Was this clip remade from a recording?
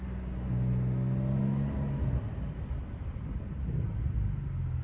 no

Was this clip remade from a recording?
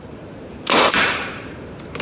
yes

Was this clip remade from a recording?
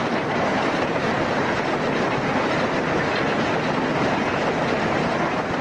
no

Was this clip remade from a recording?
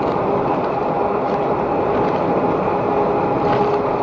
no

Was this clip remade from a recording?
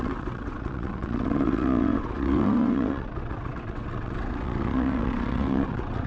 yes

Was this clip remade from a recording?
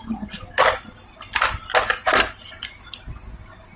no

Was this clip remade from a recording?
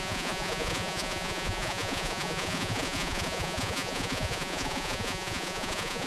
yes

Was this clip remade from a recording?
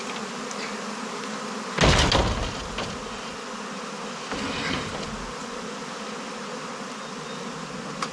no